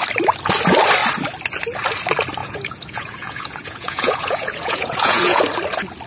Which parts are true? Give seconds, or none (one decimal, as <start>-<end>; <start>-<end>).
0.0-2.4; 5.4-6.1